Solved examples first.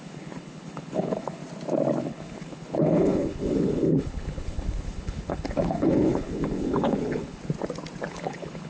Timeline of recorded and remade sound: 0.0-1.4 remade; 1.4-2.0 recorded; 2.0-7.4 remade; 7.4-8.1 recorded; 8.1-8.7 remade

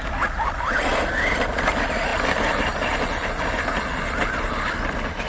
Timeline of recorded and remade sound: 0.0-5.3 recorded